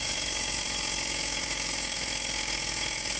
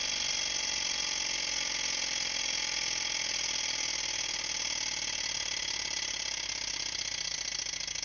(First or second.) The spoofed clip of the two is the first